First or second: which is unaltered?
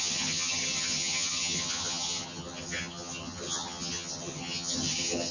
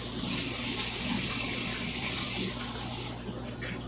second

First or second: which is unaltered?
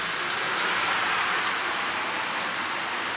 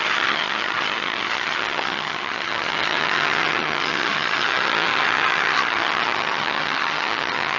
first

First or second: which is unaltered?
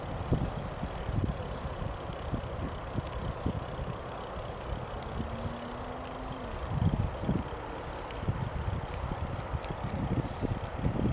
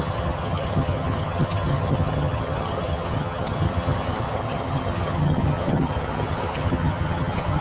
first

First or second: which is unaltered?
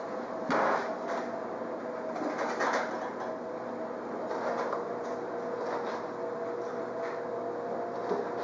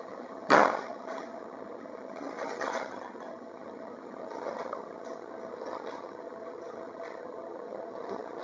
first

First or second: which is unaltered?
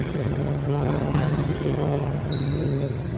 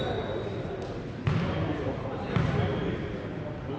second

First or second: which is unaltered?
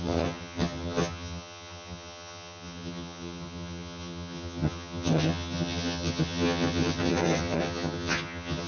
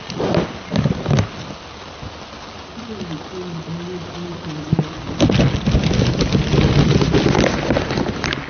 second